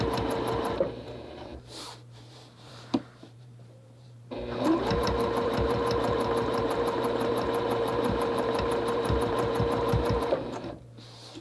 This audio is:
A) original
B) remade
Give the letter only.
B